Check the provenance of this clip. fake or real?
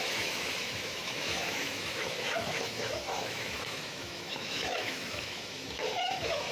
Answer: fake